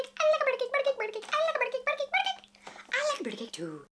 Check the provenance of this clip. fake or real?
real